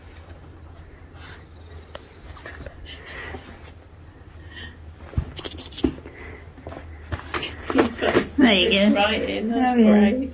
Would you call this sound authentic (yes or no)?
yes